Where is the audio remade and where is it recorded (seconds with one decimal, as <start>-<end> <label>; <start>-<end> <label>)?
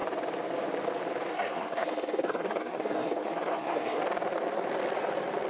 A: 0.0-1.3 recorded; 1.3-4.0 remade; 4.0-5.5 recorded